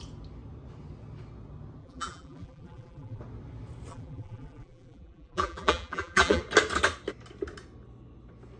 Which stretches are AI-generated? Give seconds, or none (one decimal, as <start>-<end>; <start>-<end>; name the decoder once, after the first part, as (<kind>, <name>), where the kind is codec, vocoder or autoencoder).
1.8-3.2 (vocoder, BigVGAN v2); 3.9-6.4